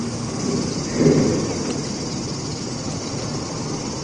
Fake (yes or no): no